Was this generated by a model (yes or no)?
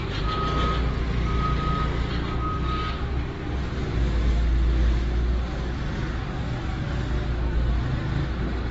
no